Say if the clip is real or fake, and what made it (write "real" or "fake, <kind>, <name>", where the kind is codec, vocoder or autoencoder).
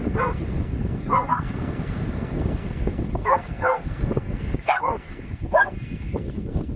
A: fake, codec, SNAC